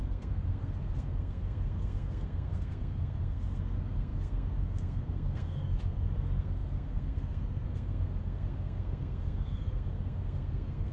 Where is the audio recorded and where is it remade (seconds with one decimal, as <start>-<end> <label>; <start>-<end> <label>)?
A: 0.0-10.9 remade